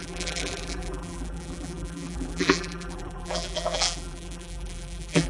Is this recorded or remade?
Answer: remade